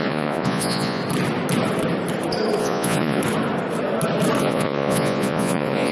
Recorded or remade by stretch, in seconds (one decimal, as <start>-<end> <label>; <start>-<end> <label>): 0.0-1.0 remade; 1.0-2.6 recorded; 2.6-3.2 remade; 3.2-4.4 recorded; 4.4-5.9 remade